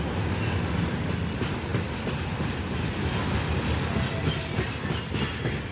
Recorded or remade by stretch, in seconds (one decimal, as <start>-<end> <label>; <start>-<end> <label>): 0.0-5.7 recorded